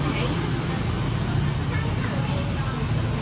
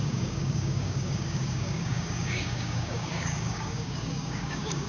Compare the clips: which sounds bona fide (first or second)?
first